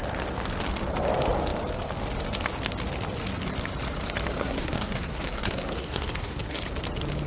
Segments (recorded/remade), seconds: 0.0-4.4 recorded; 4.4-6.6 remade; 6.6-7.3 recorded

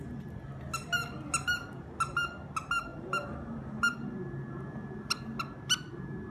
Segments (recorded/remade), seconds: 0.0-6.3 recorded

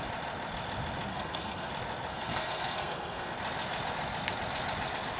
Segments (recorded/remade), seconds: 0.0-1.1 recorded; 1.1-1.7 remade; 1.7-2.1 recorded; 2.1-3.3 remade; 3.3-5.2 recorded

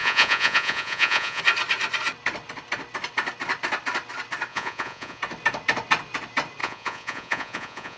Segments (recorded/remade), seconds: 0.0-1.4 remade; 1.4-4.5 recorded; 4.5-5.2 remade; 5.2-6.6 recorded; 6.6-8.0 remade

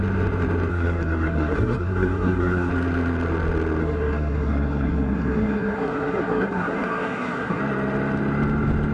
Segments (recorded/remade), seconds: 0.0-0.7 recorded; 0.7-2.7 remade; 2.7-3.8 recorded; 3.8-7.6 remade; 7.6-8.9 recorded

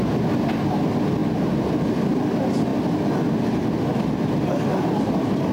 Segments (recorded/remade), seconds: 0.0-5.5 recorded